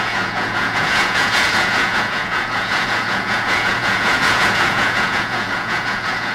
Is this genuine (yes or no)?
no